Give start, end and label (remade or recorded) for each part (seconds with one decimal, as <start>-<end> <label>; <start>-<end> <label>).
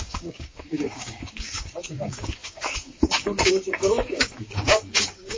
0.0-5.4 remade